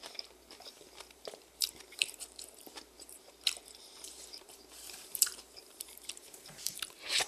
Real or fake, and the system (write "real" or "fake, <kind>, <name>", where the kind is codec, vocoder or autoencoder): fake, vocoder, BigVGAN v2